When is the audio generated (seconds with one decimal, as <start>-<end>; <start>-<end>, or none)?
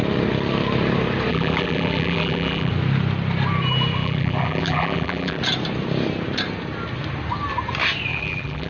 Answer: 1.3-2.7; 4.0-5.4; 8.1-8.7